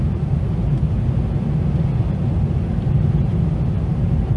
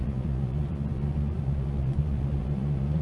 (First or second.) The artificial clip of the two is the second